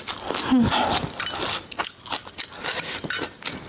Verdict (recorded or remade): recorded